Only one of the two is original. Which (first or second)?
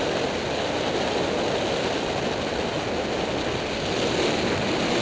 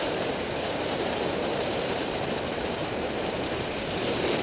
first